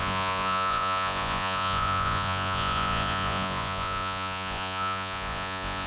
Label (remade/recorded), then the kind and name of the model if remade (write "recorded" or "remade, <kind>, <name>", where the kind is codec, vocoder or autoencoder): remade, vocoder, Vocos